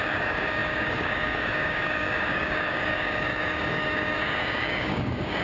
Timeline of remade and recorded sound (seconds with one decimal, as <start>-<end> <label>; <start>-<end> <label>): 0.0-5.4 remade